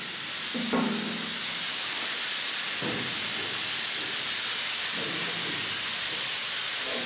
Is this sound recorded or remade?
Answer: recorded